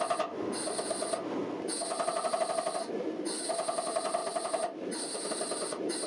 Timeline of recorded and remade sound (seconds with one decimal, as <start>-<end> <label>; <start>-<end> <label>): 0.0-4.2 recorded; 4.2-5.3 remade; 5.3-6.1 recorded